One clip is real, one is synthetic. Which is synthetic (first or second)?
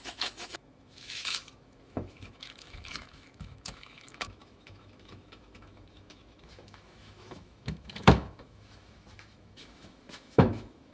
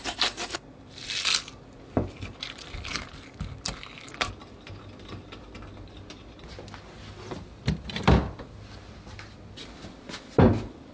first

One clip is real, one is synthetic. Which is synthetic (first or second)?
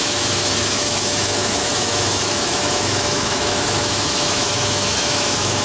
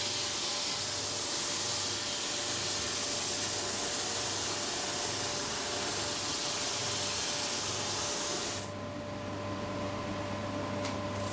first